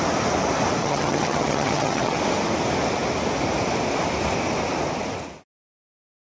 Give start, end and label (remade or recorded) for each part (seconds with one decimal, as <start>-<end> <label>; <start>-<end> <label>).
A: 0.0-0.8 recorded; 0.8-2.2 remade; 2.2-6.3 recorded